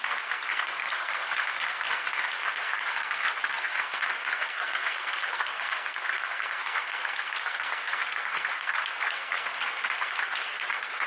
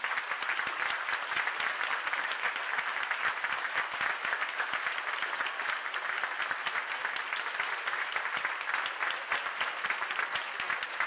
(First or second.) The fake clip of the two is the first